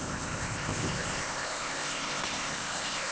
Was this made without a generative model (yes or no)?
no